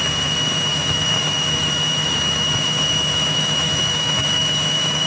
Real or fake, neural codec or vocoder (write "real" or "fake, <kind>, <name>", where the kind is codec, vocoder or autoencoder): fake, autoencoder, DAC-VAE